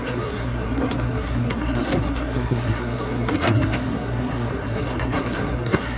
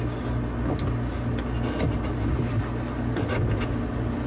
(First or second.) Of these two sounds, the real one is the second